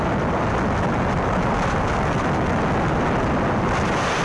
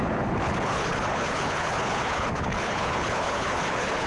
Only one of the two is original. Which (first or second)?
first